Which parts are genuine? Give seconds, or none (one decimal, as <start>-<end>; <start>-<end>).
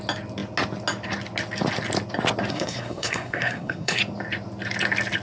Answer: 0.0-2.5; 4.0-5.2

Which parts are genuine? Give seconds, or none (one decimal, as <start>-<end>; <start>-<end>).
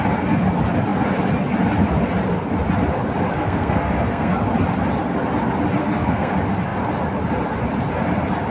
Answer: 0.0-3.4; 4.3-5.8; 6.3-8.5